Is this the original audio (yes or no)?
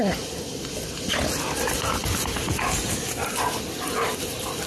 yes